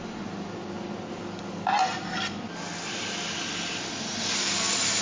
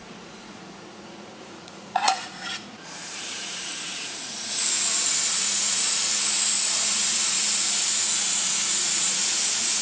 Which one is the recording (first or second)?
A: first